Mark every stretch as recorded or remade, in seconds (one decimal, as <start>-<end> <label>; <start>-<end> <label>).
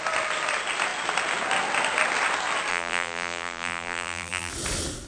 0.0-2.7 recorded; 2.7-4.5 remade; 4.5-5.1 recorded